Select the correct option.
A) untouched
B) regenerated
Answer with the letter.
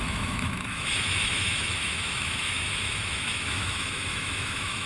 B